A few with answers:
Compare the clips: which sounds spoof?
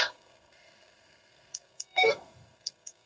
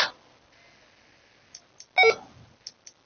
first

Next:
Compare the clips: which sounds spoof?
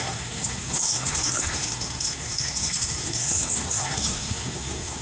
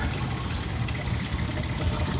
first